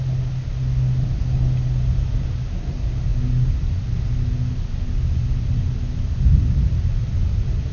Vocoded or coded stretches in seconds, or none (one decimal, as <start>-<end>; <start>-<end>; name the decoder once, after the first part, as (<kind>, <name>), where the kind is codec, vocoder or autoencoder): none